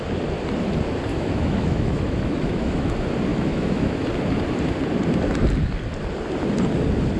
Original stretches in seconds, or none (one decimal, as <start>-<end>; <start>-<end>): 0.0-1.1; 2.9-3.3; 4.1-7.2